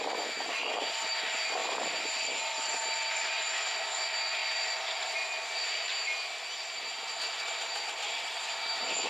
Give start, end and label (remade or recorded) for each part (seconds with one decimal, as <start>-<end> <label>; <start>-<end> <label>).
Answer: 0.0-9.1 recorded